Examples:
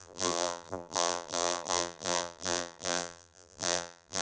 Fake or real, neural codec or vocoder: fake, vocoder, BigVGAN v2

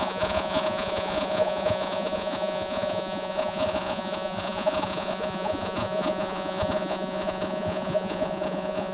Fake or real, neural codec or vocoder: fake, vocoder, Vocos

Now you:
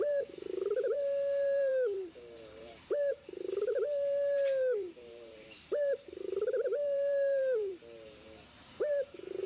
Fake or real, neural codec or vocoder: fake, vocoder, BigVGAN v2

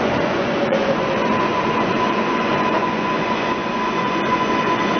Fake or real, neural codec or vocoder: fake, vocoder, Vocos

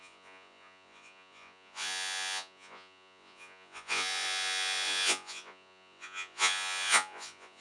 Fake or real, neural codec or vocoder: fake, vocoder, Vocos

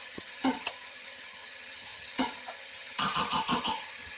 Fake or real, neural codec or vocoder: fake, vocoder, HiFi-GAN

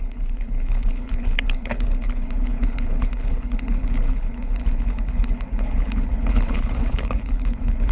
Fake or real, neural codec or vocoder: fake, codec, HILCodec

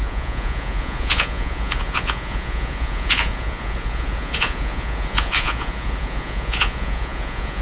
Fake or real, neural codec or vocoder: fake, vocoder, Vocos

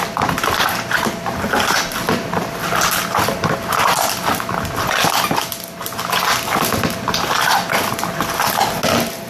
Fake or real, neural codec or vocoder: real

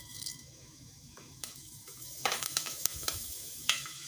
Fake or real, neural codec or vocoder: fake, autoencoder, DAC-VAE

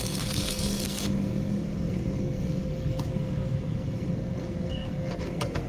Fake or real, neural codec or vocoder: fake, codec, SNAC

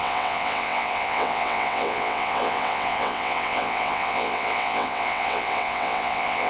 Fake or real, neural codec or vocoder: fake, vocoder, WaveNeXt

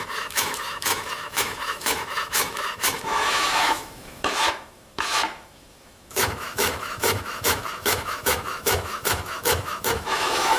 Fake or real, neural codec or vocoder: fake, autoencoder, DAC-VAE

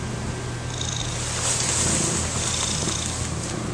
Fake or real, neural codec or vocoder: real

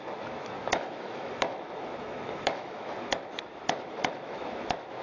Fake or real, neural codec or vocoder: fake, autoencoder, DAC-VAE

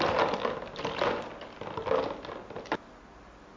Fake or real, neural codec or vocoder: real